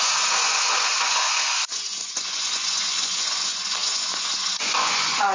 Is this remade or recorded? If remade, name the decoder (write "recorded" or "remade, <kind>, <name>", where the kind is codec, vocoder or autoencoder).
remade, vocoder, Vocos